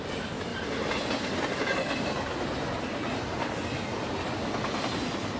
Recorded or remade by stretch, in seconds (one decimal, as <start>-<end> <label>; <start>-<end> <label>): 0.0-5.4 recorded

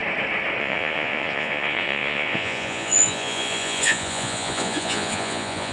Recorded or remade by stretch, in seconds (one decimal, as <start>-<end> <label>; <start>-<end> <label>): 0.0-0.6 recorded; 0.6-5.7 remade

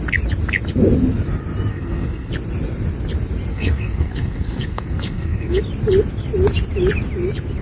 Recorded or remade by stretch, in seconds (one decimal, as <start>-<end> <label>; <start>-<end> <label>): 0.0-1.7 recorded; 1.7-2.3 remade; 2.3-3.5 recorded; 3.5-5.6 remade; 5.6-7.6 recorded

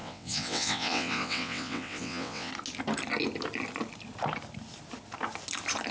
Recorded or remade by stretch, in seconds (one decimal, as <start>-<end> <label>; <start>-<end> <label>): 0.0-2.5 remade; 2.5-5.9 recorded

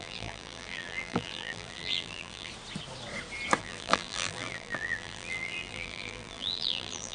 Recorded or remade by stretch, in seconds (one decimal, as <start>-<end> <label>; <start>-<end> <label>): 0.0-2.5 remade; 2.5-3.6 recorded; 3.6-7.1 remade

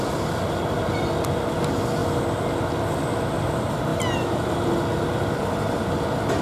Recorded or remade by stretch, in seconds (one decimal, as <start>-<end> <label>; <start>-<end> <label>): 0.0-6.4 recorded